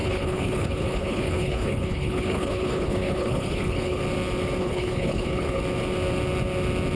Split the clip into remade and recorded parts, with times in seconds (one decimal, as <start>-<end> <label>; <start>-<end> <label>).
0.0-4.0 remade; 4.0-4.6 recorded; 4.6-5.6 remade; 5.6-7.0 recorded